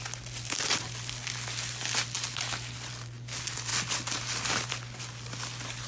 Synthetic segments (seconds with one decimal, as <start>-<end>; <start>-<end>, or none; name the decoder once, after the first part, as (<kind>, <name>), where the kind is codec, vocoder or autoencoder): none